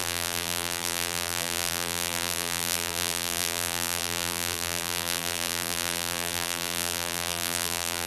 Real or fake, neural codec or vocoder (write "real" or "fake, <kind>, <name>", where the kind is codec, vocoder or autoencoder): fake, vocoder, BigVGAN v2